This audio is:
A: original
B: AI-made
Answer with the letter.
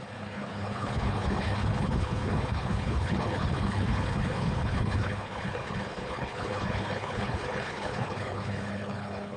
B